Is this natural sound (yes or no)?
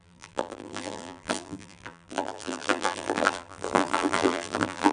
no